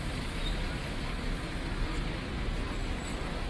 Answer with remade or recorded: remade